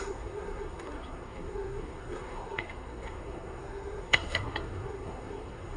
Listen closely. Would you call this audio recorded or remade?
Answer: remade